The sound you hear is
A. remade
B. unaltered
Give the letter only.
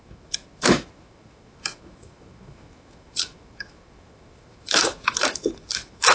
A